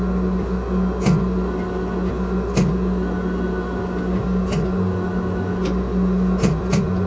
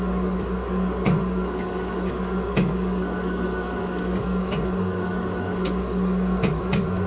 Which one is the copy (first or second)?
second